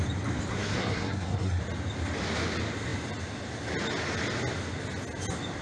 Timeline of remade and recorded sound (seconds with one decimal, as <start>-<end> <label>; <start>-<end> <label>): 0.0-0.5 recorded; 0.5-1.6 remade; 1.6-5.6 recorded